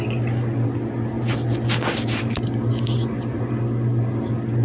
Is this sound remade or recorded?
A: recorded